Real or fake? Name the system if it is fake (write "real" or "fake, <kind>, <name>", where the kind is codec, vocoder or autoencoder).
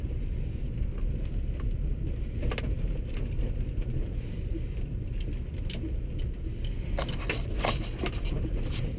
real